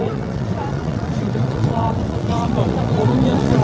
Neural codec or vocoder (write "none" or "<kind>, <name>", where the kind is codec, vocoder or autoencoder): vocoder, WaveNeXt